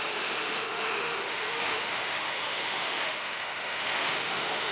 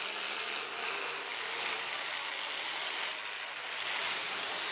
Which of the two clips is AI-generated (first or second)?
first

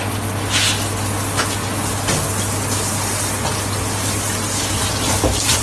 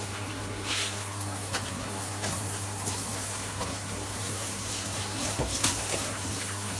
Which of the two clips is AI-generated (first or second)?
second